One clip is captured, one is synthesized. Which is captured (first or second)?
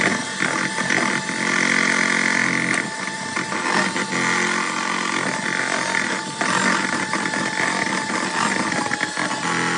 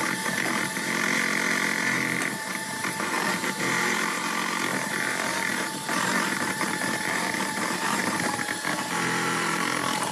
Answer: first